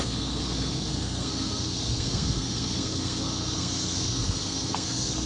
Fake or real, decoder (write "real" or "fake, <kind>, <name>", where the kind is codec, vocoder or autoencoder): fake, codec, SNAC